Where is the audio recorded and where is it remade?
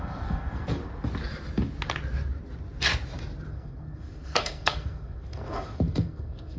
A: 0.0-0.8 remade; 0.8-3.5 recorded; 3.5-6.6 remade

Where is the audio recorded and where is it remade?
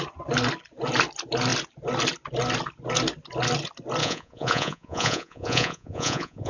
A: 0.0-4.0 recorded; 4.0-6.5 remade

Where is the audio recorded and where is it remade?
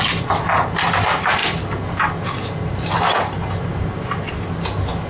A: 0.0-5.1 recorded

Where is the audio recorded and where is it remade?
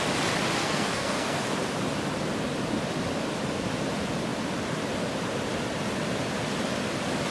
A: 0.0-0.6 recorded; 0.6-1.4 remade; 1.4-7.3 recorded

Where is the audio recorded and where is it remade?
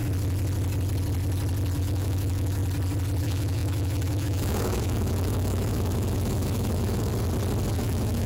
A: 0.0-1.8 recorded; 1.8-2.6 remade; 2.6-3.2 recorded; 3.2-7.1 remade; 7.1-7.7 recorded; 7.7-8.3 remade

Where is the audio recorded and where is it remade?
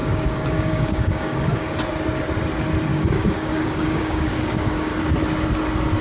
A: 0.0-1.8 remade; 1.8-2.9 recorded; 2.9-4.9 remade; 4.9-6.0 recorded